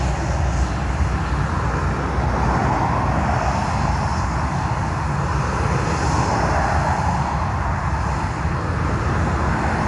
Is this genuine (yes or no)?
yes